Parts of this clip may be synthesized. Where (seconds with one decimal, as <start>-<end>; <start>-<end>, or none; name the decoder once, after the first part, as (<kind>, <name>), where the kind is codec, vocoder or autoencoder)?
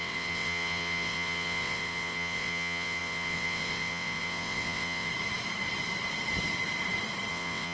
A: 0.0-5.1 (vocoder, WaveNeXt); 7.3-7.7